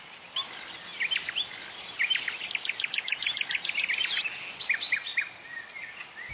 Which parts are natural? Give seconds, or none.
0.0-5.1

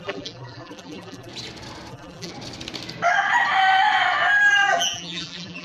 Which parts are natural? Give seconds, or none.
1.3-1.9; 2.3-4.7